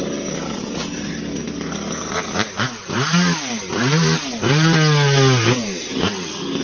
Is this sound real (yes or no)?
yes